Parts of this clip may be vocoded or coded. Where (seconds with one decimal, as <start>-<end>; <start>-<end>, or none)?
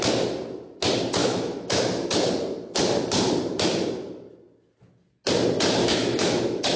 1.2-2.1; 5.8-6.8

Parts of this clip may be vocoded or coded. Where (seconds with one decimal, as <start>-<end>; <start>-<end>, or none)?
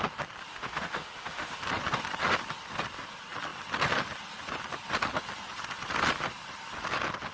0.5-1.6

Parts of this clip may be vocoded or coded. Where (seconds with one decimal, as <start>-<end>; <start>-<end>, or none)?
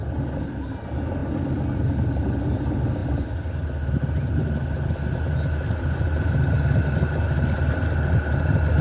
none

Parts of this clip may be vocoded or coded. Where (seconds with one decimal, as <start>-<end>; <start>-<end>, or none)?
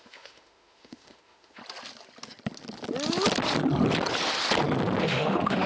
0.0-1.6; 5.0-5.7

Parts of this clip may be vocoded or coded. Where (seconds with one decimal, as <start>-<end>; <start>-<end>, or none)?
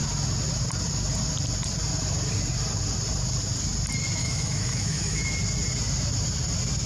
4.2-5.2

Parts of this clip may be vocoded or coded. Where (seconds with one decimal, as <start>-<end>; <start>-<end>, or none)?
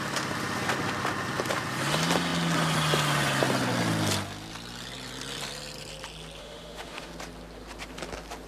6.4-7.1